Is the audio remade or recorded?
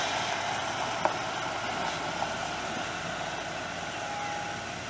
recorded